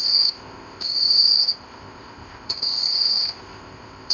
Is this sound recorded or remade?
remade